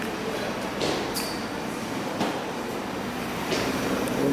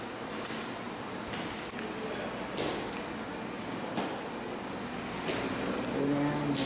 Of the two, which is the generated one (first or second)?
first